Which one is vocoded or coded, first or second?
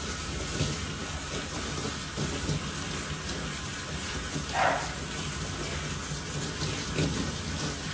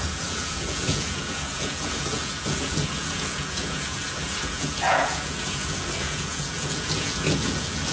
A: second